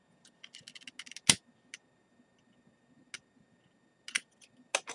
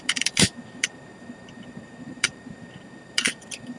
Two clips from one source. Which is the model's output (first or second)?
second